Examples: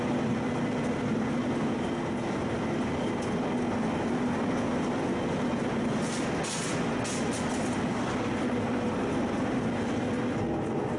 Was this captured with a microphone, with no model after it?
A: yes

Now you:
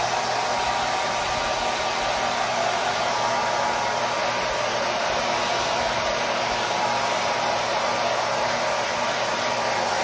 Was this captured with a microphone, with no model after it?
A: yes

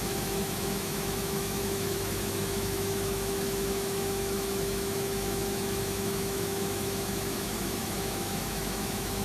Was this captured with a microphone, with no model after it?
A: no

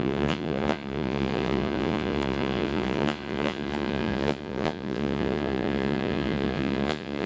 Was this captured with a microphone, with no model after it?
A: no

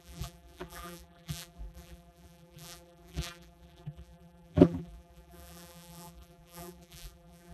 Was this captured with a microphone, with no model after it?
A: no